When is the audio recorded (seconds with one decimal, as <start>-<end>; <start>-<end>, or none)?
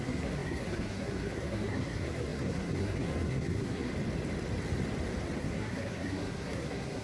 3.9-5.4